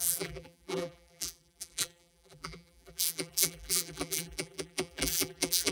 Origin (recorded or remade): remade